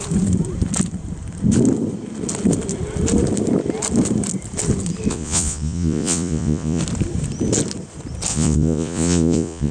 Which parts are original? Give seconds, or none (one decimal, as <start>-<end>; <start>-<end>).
0.0-5.1; 6.8-8.3